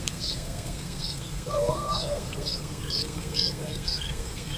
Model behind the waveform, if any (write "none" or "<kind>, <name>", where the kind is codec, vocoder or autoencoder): codec, SNAC